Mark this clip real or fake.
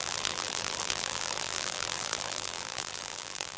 fake